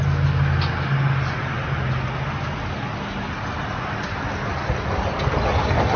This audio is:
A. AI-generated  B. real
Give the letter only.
B